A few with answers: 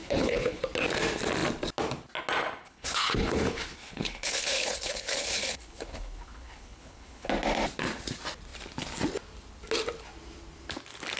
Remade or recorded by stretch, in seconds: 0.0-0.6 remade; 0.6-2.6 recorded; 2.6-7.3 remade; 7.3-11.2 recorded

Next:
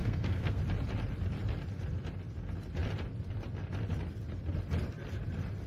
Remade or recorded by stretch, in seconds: 0.0-0.6 remade; 0.6-5.7 recorded